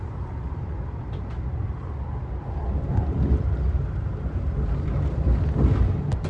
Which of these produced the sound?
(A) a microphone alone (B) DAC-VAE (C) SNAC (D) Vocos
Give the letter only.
A